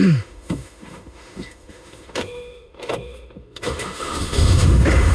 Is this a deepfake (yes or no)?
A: yes